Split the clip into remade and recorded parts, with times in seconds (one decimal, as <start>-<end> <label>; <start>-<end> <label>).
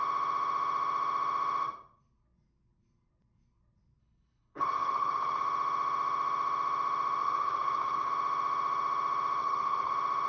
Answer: 0.0-4.0 recorded; 4.0-5.4 remade; 5.4-7.2 recorded; 7.2-8.1 remade; 8.1-9.4 recorded; 9.4-9.9 remade; 9.9-10.3 recorded